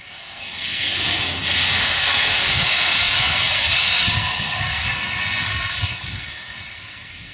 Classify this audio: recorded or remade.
remade